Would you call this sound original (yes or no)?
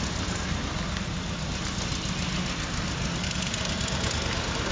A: yes